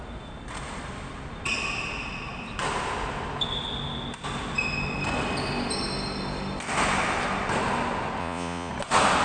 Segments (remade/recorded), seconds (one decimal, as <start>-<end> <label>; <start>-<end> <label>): 0.0-8.2 recorded; 8.2-8.7 remade; 8.7-9.2 recorded